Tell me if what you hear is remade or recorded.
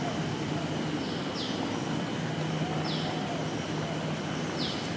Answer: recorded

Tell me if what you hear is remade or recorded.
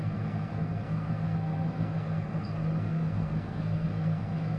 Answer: remade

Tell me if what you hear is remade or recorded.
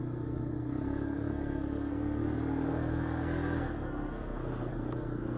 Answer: remade